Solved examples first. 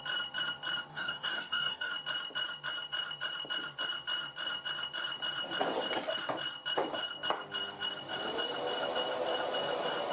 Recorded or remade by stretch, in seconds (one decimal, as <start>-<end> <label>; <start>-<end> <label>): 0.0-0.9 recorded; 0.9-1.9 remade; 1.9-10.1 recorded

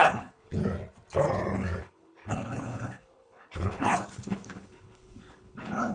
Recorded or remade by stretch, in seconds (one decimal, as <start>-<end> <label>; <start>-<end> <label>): 0.0-0.6 remade; 0.6-1.8 recorded; 1.8-5.9 remade

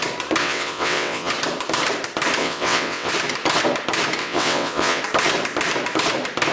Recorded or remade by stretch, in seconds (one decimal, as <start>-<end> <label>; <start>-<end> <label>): 0.0-0.4 recorded; 0.4-1.3 remade; 1.3-2.4 recorded; 2.4-3.1 remade; 3.1-4.2 recorded; 4.2-5.0 remade; 5.0-6.5 recorded

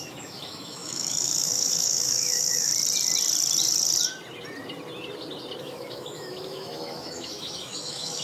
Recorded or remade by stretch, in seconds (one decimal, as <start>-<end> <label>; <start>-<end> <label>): 0.0-2.7 remade; 2.7-5.6 recorded; 5.6-8.2 remade